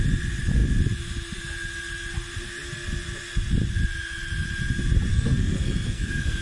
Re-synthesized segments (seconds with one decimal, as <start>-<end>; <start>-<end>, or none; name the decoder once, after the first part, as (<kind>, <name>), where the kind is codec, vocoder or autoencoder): 5.1-6.4 (codec, SNAC)